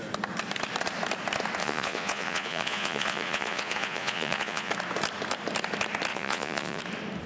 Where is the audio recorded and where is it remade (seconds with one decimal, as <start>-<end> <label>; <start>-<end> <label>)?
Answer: 0.0-1.6 recorded; 1.6-4.7 remade; 4.7-6.1 recorded; 6.1-6.8 remade; 6.8-7.3 recorded